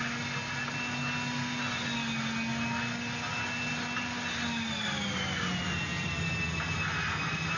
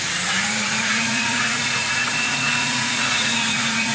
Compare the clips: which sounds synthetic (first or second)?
second